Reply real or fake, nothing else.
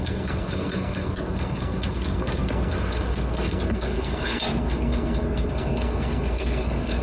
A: fake